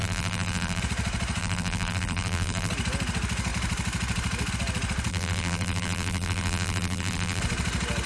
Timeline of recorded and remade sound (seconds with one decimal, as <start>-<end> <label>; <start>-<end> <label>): 0.0-0.8 remade; 0.8-1.4 recorded; 1.4-2.7 remade; 2.7-5.1 recorded; 5.1-7.4 remade; 7.4-8.1 recorded